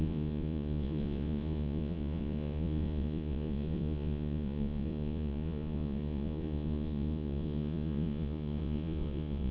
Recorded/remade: remade